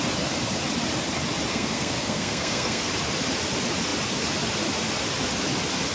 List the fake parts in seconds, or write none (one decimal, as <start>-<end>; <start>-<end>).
1.5-2.9